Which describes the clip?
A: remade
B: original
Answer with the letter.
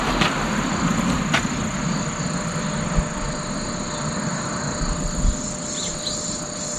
B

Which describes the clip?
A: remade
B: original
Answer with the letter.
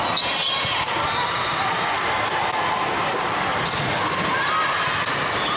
B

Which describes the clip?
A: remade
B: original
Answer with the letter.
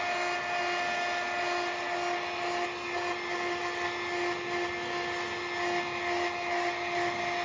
B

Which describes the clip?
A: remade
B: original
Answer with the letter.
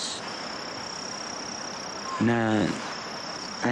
B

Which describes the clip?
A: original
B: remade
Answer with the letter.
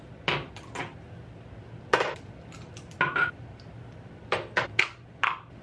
A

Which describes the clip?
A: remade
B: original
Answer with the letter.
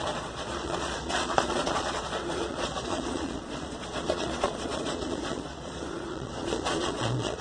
A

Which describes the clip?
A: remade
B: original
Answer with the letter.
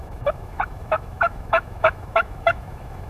A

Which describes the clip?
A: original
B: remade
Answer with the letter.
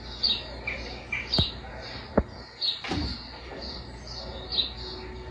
A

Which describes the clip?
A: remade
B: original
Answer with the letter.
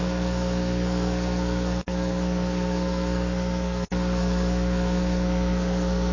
A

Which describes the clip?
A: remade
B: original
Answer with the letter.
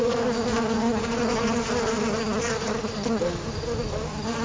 B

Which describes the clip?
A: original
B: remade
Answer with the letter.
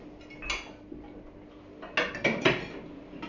A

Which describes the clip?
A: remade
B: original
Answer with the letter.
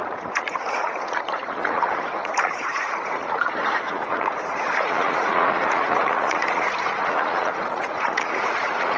A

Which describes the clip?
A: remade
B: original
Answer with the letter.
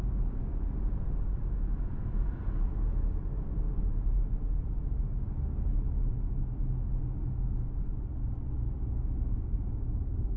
B